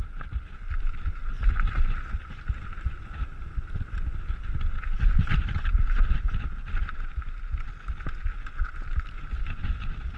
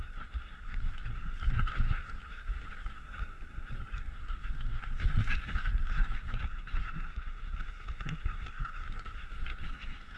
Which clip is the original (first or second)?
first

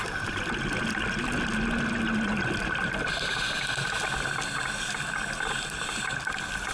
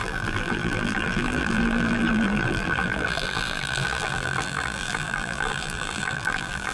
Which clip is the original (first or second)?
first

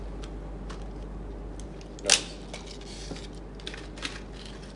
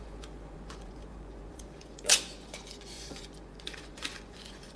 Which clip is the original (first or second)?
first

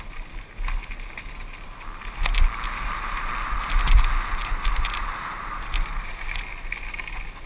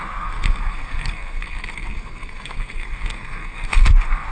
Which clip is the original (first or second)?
first